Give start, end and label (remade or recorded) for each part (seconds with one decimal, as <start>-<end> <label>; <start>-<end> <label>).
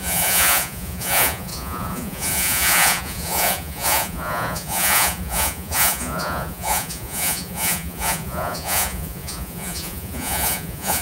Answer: 0.0-11.0 remade